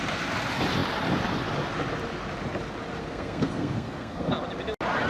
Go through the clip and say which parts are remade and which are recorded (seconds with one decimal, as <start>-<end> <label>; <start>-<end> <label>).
0.0-3.0 recorded; 3.0-4.3 remade; 4.3-5.1 recorded